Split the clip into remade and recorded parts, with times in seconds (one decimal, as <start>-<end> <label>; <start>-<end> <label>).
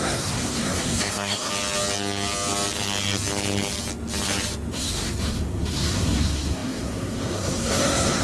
0.0-1.5 remade; 1.5-4.7 recorded; 4.7-8.2 remade